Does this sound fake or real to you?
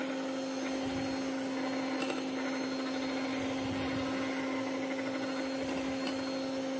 real